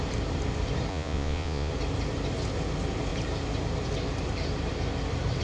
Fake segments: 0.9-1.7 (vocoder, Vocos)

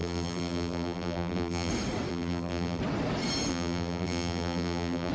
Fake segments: 0.0-1.7 (vocoder, BigVGAN v2); 2.1-2.8; 3.5-5.1

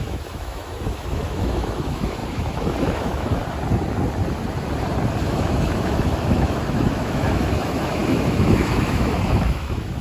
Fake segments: 0.0-3.4 (autoencoder, DAC-VAE); 5.2-10.0